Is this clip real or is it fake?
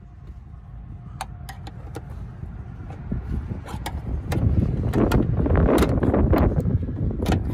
real